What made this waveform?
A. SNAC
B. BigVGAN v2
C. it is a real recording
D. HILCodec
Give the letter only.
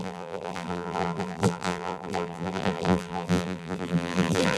B